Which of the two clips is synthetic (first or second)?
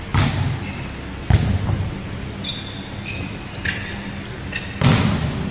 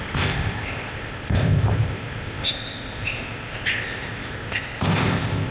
second